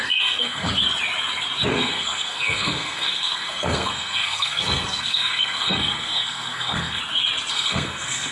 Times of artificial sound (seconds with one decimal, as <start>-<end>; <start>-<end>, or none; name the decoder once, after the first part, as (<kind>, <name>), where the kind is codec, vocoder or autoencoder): 0.0-0.7 (codec, SNAC); 1.7-7.0; 7.5-8.3